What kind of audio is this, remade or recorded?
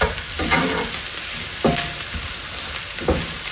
recorded